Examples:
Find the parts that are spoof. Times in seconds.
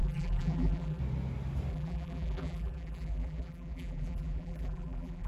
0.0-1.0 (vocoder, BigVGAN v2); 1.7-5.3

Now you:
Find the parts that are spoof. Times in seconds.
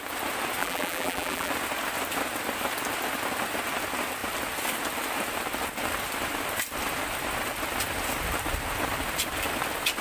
0.6-1.5 (vocoder, BigVGAN v2)